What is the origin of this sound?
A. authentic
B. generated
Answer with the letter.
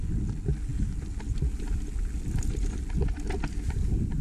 A